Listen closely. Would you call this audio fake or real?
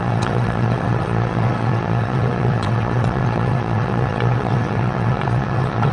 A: fake